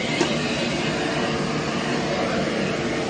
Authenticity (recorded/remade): recorded